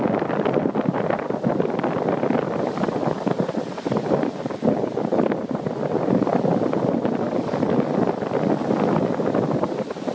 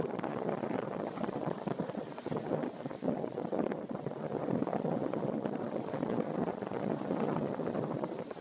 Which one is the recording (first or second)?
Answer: first